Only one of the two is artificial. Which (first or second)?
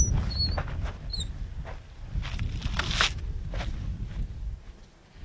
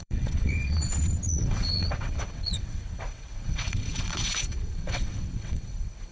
second